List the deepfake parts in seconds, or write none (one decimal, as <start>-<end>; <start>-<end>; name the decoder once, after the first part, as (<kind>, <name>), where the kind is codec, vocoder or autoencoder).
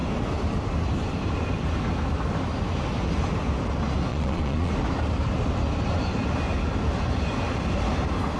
4.1-4.7 (vocoder, Vocos)